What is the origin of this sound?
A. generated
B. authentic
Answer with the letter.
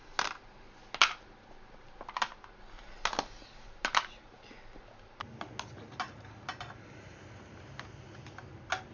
B